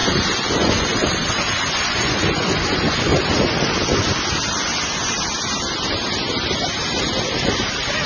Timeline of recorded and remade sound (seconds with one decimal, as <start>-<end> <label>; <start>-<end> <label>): 0.0-0.5 recorded; 0.5-0.9 remade; 0.9-1.5 recorded; 1.5-3.1 remade; 3.1-8.1 recorded